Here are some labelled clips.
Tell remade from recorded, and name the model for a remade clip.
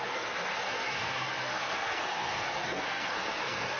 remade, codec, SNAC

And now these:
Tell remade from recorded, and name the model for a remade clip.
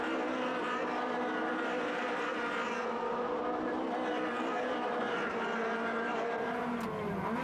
recorded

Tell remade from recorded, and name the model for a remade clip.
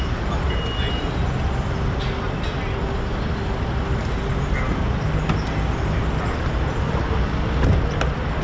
recorded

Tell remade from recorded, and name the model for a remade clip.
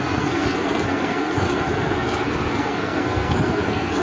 remade, codec, SNAC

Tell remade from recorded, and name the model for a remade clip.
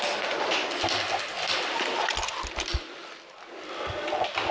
recorded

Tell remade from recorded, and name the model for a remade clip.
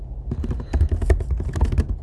recorded